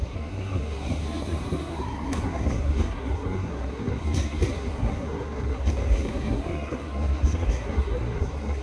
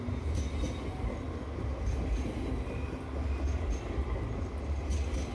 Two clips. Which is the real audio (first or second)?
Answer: second